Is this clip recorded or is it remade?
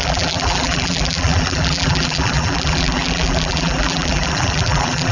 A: remade